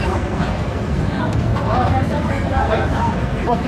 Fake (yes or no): yes